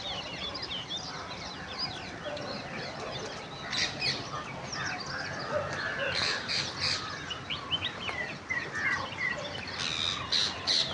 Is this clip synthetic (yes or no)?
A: no